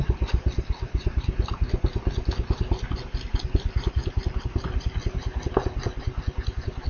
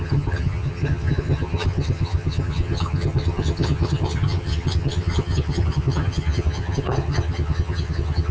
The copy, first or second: second